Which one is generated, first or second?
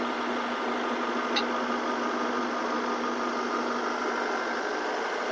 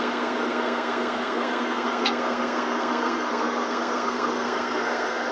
second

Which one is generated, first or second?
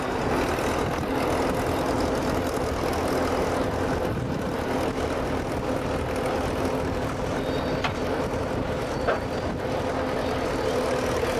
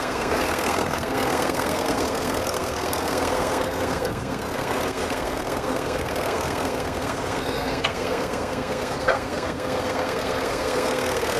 second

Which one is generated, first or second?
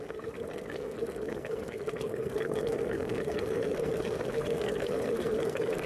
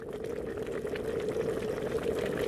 first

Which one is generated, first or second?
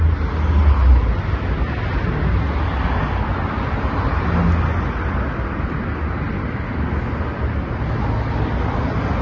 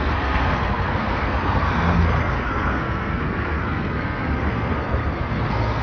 second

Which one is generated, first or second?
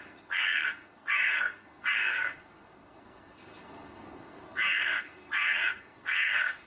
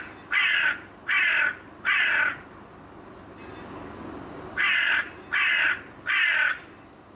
first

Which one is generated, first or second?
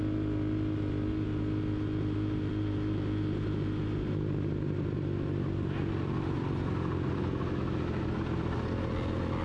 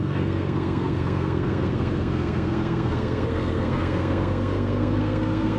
second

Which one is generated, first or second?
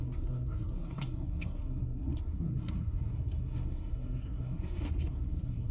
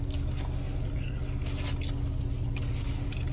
first